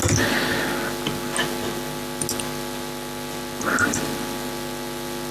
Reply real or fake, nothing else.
real